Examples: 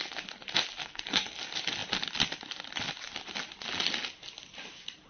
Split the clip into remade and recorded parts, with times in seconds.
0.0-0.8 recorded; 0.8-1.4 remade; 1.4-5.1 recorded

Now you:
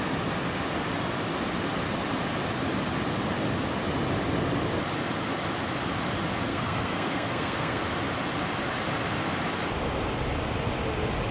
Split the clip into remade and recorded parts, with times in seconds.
0.0-6.5 recorded; 6.5-7.8 remade; 7.8-11.3 recorded

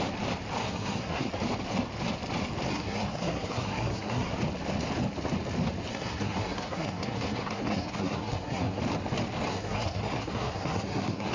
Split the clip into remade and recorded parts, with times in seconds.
0.0-0.6 recorded; 0.6-1.3 remade; 1.3-2.7 recorded; 2.7-4.3 remade; 4.3-5.9 recorded; 5.9-8.8 remade; 8.8-9.5 recorded; 9.5-11.3 remade

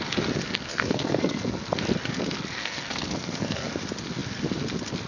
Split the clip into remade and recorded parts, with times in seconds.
0.0-0.7 recorded; 0.7-1.6 remade; 1.6-2.6 recorded; 2.6-3.7 remade; 3.7-5.1 recorded

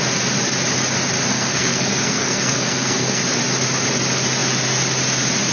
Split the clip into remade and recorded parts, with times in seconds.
0.0-1.3 recorded; 1.3-3.2 remade; 3.2-5.5 recorded

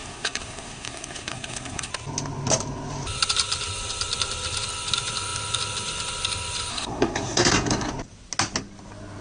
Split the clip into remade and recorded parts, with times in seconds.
0.0-1.9 remade; 1.9-6.7 recorded; 6.7-7.9 remade; 7.9-9.2 recorded